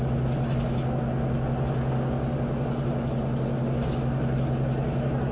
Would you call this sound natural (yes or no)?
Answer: yes